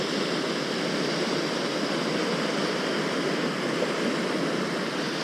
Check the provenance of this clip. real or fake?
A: real